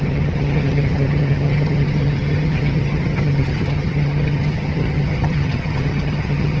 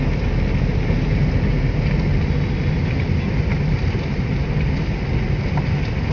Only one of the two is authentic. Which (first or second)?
second